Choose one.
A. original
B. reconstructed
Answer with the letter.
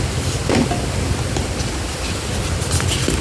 A